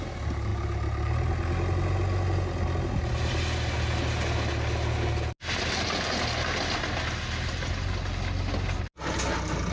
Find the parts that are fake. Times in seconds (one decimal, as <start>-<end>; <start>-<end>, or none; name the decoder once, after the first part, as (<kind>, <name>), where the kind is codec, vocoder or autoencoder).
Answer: none